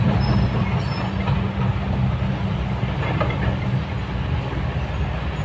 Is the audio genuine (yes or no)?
yes